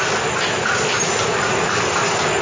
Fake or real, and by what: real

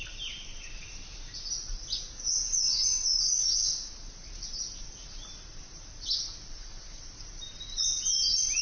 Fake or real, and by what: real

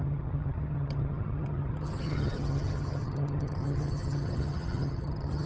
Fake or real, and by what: fake, vocoder, HiFi-GAN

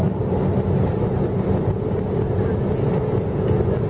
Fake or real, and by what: real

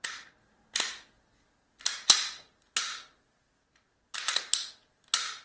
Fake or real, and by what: real